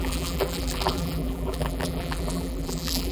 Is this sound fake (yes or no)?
yes